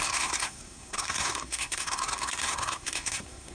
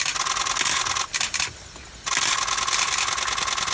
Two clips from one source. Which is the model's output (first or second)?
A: first